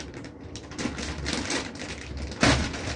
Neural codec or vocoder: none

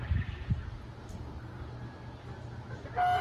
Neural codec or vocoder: none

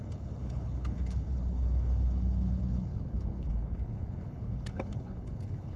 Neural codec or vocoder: codec, HILCodec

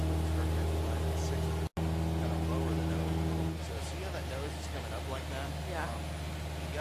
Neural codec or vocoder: none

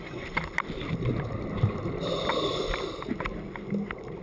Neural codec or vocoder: none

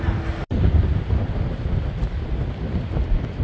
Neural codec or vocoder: none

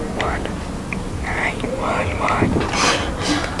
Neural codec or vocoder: none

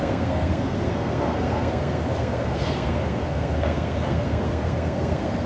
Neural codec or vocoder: codec, SNAC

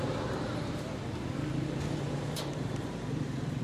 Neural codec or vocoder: vocoder, BigVGAN v2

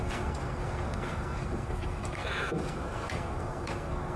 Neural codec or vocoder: codec, SNAC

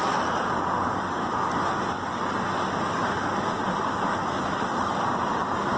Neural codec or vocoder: none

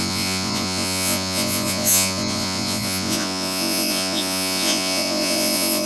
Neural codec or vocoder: vocoder, Vocos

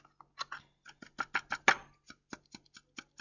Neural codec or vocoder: none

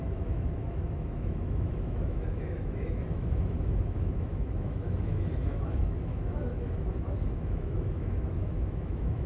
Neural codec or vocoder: autoencoder, DAC-VAE